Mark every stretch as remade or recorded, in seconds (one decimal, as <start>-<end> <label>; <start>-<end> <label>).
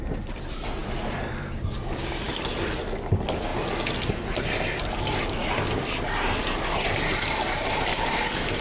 0.0-3.5 remade; 3.5-4.1 recorded; 4.1-5.4 remade; 5.4-7.7 recorded; 7.7-8.6 remade